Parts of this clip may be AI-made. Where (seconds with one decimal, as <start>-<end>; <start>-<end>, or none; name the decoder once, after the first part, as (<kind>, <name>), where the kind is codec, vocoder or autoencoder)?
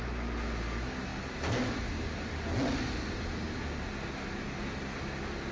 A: none